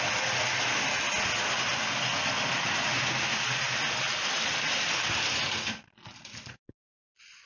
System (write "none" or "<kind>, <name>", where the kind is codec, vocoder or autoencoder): none